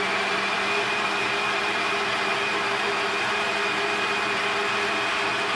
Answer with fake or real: real